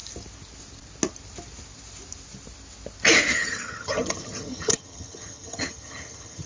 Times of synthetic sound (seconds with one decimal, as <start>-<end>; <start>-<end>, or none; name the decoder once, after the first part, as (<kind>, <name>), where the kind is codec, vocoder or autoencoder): 3.3-6.5 (vocoder, HiFi-GAN)

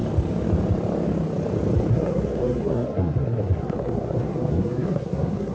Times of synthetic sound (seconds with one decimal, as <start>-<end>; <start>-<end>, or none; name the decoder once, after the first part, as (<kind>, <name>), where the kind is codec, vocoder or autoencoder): 1.9-5.5 (codec, SNAC)

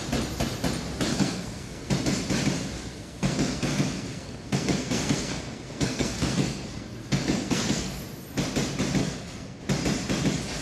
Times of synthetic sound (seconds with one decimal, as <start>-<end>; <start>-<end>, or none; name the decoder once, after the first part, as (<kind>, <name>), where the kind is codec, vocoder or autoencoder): 1.1-1.9 (codec, SNAC); 2.8-8.0; 9.0-9.6

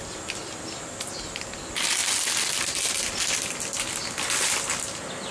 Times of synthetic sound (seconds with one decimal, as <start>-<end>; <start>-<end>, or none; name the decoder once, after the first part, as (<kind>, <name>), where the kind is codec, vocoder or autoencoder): none

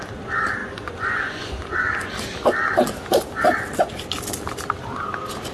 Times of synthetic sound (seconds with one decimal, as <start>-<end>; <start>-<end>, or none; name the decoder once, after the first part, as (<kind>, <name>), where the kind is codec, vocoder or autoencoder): 0.6-2.1 (vocoder, Vocos)

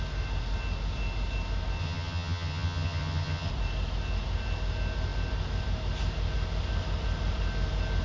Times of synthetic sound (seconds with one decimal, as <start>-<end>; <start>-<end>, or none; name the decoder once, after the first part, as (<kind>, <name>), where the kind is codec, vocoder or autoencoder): 1.8-3.5 (vocoder, HiFi-GAN)

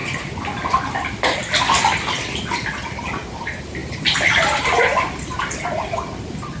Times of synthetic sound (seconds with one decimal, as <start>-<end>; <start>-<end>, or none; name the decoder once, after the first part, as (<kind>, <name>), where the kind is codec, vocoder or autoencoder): none